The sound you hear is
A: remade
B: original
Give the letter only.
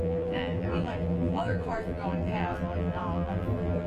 A